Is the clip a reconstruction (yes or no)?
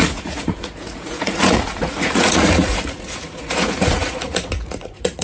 yes